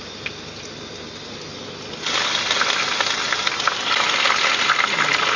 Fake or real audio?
real